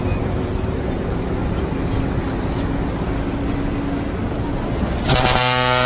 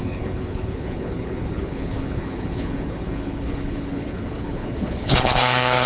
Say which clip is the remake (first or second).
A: second